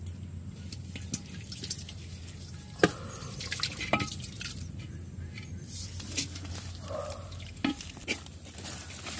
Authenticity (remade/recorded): recorded